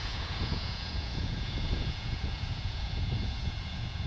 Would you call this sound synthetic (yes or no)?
yes